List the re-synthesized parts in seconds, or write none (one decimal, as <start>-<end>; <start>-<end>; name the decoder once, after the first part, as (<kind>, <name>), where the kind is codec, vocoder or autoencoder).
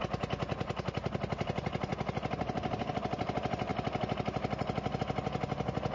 none